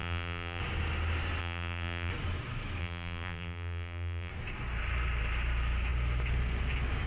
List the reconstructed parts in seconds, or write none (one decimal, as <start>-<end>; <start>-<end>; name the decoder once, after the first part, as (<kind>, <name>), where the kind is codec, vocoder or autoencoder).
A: 0.0-0.6 (vocoder, BigVGAN v2); 1.4-2.1; 2.8-4.3